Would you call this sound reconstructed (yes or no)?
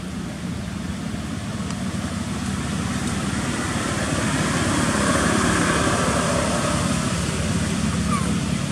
yes